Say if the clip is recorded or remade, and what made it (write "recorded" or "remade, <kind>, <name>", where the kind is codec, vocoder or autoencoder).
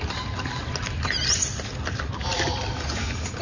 recorded